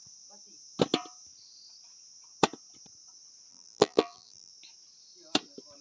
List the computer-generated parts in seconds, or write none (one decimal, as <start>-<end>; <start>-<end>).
3.5-4.5